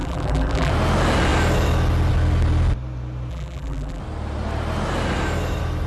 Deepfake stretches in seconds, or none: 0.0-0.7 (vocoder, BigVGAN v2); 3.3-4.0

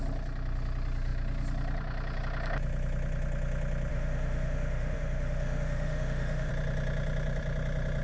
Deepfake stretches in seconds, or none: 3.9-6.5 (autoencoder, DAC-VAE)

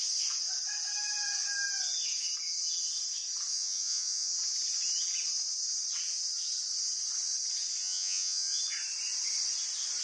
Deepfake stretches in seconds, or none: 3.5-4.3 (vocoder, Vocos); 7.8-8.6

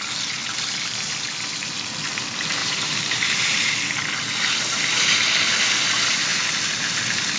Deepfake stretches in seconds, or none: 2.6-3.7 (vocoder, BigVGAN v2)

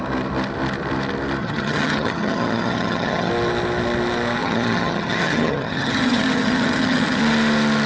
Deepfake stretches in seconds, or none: 1.4-3.3 (vocoder, HiFi-GAN); 4.4-7.2